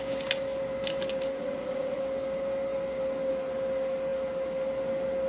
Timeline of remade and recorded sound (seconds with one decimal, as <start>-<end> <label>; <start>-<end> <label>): 0.0-1.4 recorded; 1.4-2.0 remade; 2.0-5.3 recorded